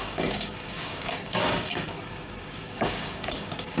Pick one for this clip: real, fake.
fake